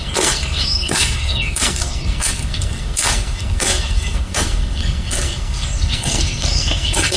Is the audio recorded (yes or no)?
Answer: no